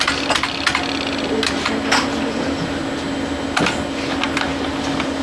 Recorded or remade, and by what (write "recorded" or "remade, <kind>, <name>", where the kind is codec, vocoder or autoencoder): recorded